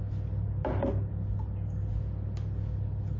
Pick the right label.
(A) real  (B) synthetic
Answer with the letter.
A